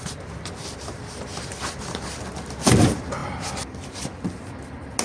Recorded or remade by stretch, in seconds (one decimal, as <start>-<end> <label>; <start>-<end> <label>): 0.0-5.0 recorded